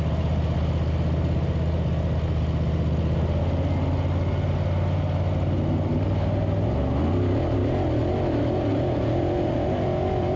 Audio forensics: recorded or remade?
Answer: recorded